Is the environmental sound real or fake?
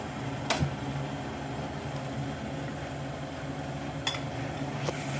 real